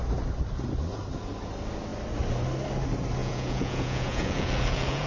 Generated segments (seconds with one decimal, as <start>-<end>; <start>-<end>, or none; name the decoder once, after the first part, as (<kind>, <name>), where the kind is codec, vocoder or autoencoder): 3.2-5.1 (vocoder, Vocos)